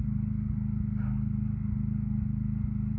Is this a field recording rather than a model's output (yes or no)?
yes